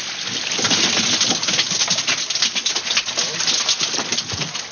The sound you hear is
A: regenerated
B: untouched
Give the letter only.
B